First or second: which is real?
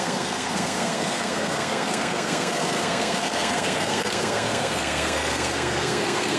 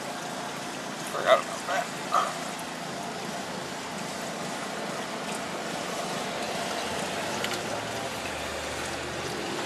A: second